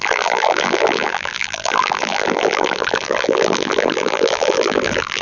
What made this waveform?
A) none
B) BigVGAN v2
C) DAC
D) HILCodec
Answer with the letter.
B